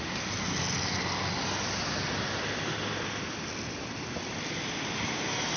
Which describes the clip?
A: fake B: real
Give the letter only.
B